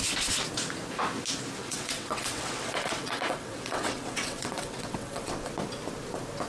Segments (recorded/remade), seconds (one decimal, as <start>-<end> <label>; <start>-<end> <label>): 0.0-1.6 recorded; 1.6-5.5 remade; 5.5-6.5 recorded